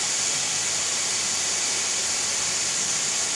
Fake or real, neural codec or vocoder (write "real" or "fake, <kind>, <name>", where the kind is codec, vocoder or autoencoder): real